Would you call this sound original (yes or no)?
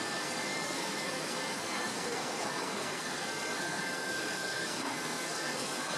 no